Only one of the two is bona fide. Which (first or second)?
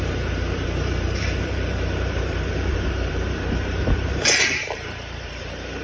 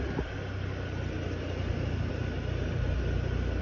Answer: second